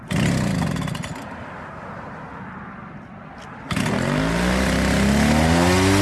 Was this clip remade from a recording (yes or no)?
no